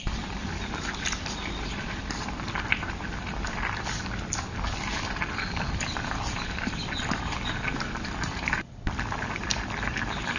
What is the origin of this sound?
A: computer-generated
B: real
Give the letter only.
A